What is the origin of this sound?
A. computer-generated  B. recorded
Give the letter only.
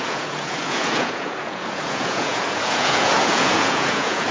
A